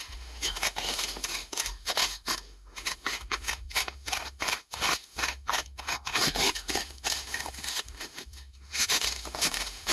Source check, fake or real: fake